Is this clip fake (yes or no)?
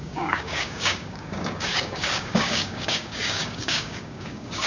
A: yes